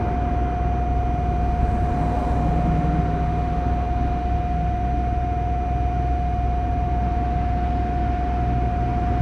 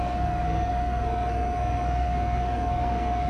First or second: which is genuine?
first